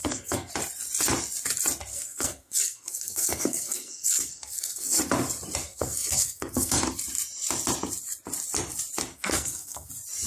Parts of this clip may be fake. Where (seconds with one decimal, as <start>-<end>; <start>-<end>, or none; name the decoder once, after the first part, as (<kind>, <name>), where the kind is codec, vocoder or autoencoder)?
0.0-0.5 (codec, SNAC); 1.9-5.0; 5.6-6.8; 9.1-9.9